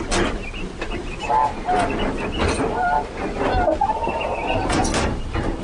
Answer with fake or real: real